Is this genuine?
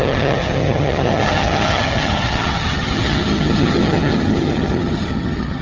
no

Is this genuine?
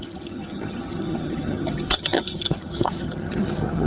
no